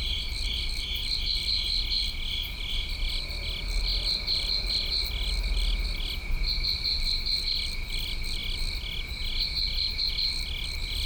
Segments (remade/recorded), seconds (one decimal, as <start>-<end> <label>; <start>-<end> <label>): 0.0-11.1 recorded

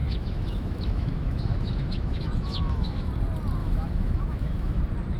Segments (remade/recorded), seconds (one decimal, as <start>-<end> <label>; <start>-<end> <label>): 0.0-3.1 remade; 3.1-3.6 recorded; 3.6-4.8 remade; 4.8-5.2 recorded

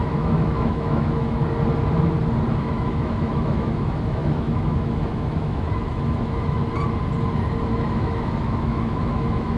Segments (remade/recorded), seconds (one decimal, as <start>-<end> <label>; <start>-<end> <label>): 0.0-1.4 remade; 1.4-2.6 recorded; 2.6-6.6 remade; 6.6-7.7 recorded; 7.7-9.6 remade

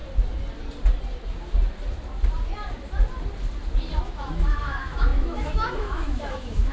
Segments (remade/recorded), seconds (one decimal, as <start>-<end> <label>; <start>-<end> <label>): 0.0-4.0 recorded; 4.0-6.7 remade

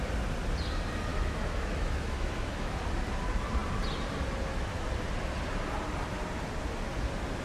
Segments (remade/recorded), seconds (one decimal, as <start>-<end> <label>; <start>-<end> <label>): 0.0-1.1 recorded; 1.1-2.8 remade; 2.8-7.4 recorded

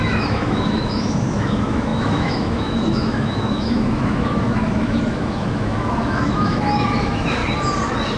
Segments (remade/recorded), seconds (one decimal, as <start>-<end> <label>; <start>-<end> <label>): 0.0-7.4 remade; 7.4-8.2 recorded